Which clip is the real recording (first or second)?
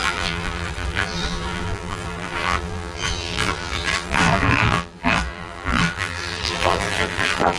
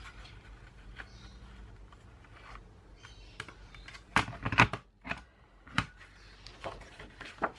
second